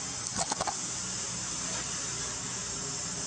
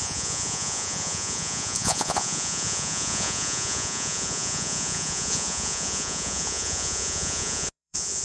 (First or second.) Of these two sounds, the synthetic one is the second